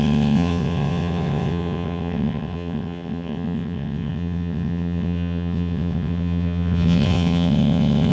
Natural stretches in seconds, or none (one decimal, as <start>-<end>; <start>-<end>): none